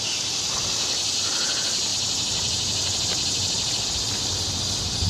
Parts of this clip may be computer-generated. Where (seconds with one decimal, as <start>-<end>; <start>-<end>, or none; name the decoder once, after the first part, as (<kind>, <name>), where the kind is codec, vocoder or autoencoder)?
none